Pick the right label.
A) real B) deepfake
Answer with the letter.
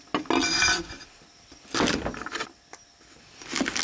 A